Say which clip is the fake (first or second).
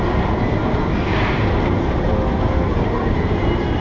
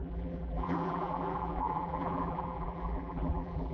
second